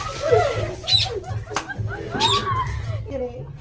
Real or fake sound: real